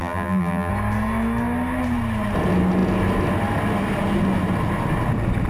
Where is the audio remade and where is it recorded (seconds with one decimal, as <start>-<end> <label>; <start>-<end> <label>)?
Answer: 0.0-0.7 remade; 0.7-5.5 recorded